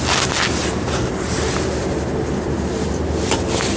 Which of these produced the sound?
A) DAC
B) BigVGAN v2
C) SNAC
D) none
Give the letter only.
D